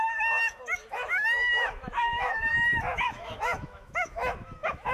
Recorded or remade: remade